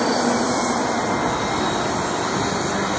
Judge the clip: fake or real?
real